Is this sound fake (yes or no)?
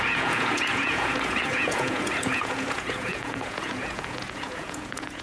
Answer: yes